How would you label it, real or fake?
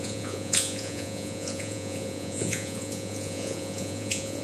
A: fake